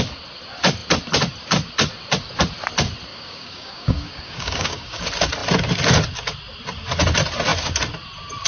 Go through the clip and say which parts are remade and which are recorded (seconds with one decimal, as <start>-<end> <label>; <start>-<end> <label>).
0.0-3.1 recorded; 3.1-5.0 remade; 5.0-8.5 recorded